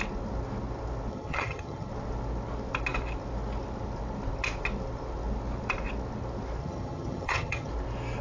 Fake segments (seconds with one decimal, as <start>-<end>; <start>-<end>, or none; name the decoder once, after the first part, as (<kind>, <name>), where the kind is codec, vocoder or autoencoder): 1.1-1.9 (vocoder, HiFi-GAN); 6.6-7.7